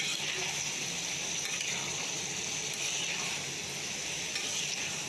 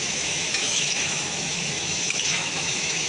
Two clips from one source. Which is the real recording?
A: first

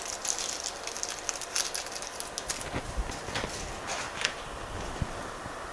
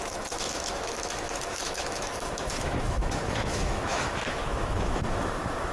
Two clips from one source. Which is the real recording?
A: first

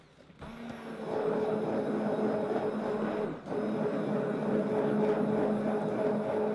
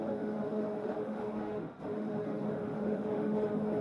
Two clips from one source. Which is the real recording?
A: first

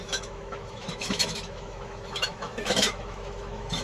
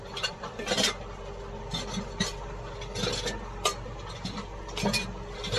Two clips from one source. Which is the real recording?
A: second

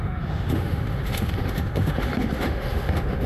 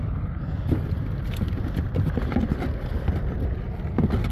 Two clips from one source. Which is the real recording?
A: second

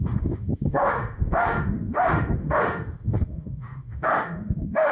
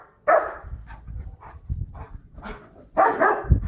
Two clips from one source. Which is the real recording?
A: second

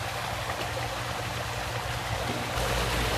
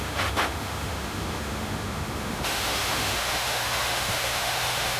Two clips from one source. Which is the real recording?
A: first